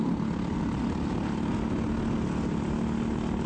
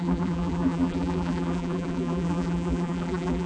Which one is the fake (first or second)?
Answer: second